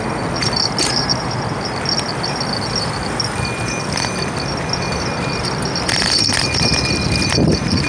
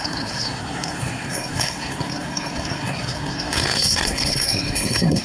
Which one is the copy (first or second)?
second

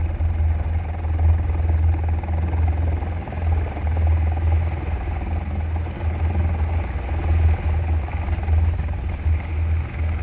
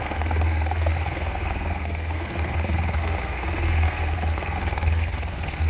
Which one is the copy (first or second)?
second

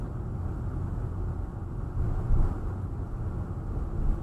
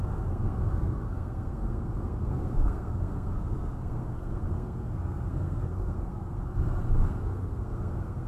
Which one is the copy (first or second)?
second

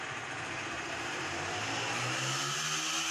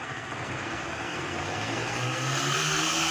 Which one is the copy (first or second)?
second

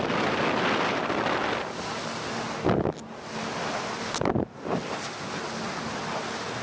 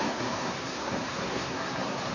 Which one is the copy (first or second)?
second